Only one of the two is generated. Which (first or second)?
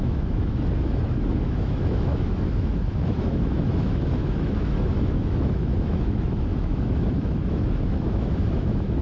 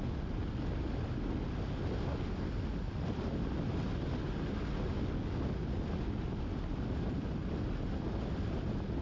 first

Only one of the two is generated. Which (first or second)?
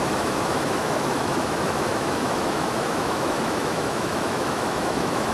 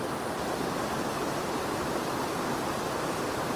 first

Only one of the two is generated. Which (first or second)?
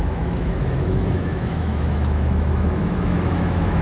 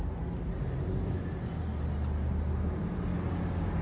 first